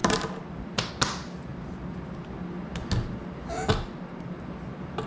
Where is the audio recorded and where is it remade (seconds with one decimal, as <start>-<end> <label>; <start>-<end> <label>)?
0.0-0.9 remade; 0.9-5.1 recorded